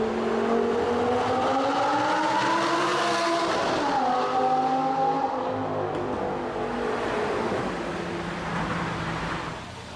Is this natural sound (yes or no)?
yes